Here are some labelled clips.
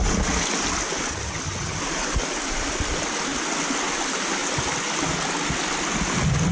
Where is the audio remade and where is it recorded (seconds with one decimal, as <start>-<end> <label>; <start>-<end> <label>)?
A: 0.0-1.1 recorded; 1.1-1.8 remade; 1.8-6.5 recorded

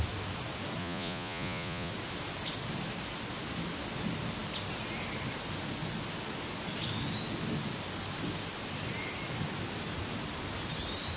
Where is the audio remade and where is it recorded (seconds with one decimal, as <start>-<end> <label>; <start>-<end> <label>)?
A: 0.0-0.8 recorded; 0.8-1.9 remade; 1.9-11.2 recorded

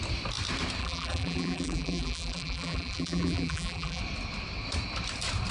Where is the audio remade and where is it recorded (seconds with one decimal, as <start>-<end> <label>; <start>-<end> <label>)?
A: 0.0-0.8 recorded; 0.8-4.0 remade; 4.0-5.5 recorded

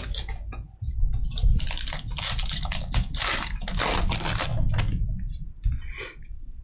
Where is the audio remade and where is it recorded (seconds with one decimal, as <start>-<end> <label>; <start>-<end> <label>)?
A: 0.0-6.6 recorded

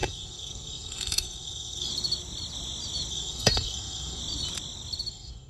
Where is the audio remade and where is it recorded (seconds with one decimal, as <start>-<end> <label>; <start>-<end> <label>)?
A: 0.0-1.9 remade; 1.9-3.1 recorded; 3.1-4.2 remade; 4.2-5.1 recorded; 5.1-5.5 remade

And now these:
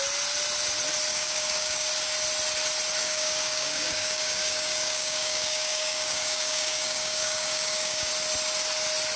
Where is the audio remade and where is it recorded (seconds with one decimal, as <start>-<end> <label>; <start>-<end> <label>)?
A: 0.0-1.1 recorded; 1.1-1.9 remade; 1.9-3.0 recorded; 3.0-8.1 remade; 8.1-9.2 recorded